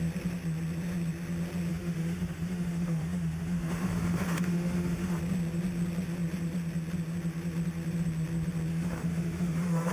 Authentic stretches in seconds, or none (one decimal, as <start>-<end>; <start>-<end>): 0.0-1.7; 5.2-8.7